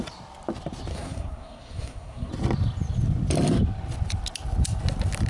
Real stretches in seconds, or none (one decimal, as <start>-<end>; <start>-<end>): 0.0-0.9; 2.3-5.3